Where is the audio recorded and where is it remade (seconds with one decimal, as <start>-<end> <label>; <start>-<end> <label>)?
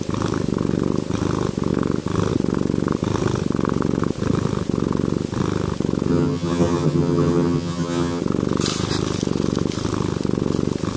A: 0.0-6.1 recorded; 6.1-8.2 remade; 8.2-11.0 recorded